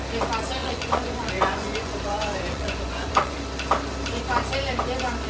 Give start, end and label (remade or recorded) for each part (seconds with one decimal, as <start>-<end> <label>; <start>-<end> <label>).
0.0-0.6 recorded; 0.6-3.3 remade; 3.3-5.3 recorded